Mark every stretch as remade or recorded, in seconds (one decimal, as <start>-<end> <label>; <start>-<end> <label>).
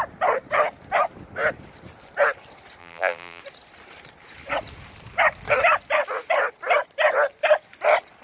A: 0.0-2.8 recorded; 2.8-3.4 remade; 3.4-8.2 recorded